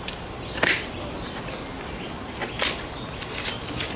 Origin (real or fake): fake